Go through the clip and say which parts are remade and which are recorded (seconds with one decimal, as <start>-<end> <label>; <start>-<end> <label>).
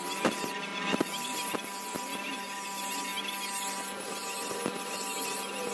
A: 0.0-5.7 recorded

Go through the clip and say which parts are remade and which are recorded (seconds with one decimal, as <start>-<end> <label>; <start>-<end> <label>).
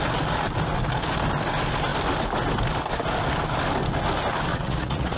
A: 0.0-4.5 recorded; 4.5-5.2 remade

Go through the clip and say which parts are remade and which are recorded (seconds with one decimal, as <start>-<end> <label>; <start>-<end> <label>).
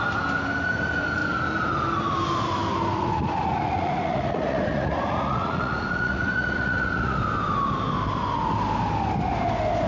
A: 0.0-2.9 recorded; 2.9-7.2 remade; 7.2-9.9 recorded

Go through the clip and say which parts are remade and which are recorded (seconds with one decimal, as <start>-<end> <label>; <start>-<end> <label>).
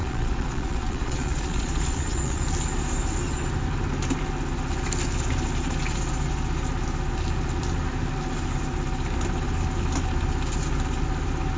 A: 0.0-2.4 remade; 2.4-11.6 recorded